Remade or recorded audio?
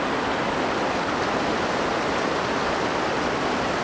recorded